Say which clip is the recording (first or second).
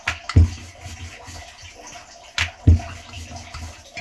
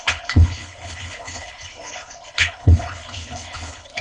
first